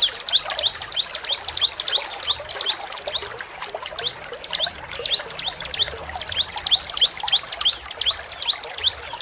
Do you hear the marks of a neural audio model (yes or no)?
no